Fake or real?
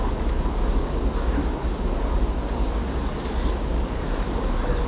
fake